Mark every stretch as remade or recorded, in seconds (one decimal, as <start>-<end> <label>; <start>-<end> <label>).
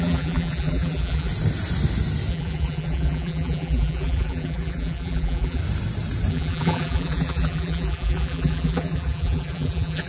0.0-1.3 remade; 1.3-2.3 recorded; 2.3-5.6 remade; 5.6-6.3 recorded; 6.3-10.1 remade